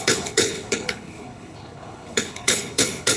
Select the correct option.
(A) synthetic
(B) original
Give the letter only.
A